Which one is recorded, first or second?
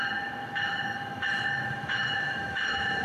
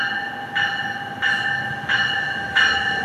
second